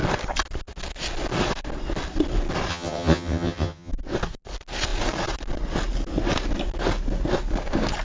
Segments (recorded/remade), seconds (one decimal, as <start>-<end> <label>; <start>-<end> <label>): 0.0-2.7 recorded; 2.7-3.9 remade; 3.9-8.0 recorded